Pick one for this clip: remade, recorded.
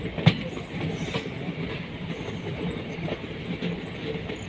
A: recorded